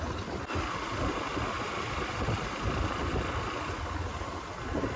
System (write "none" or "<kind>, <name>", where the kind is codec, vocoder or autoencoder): none